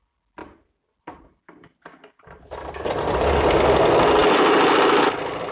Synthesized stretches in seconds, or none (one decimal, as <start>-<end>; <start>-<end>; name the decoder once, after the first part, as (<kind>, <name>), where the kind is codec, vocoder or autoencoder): none